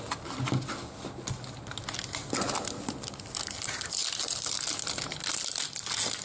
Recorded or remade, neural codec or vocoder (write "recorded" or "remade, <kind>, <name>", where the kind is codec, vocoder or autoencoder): recorded